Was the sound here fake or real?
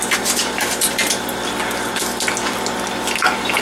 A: real